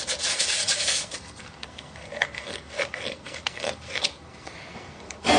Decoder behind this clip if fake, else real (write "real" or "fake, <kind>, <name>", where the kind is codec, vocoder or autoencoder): fake, codec, SNAC